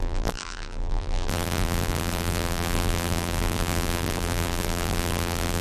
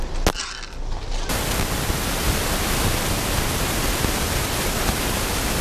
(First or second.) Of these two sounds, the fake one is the first